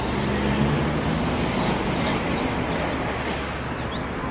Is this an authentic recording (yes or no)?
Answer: yes